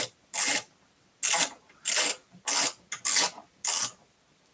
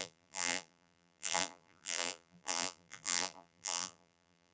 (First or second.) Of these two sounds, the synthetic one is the second